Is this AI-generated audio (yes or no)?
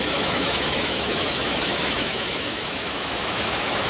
yes